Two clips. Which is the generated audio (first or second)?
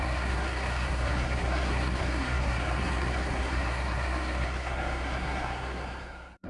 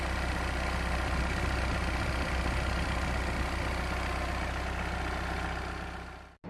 first